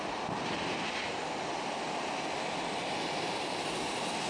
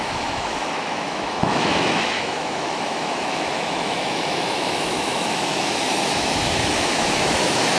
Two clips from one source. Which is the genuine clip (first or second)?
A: first